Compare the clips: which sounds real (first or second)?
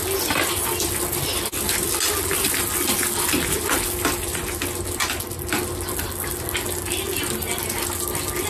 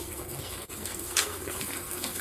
first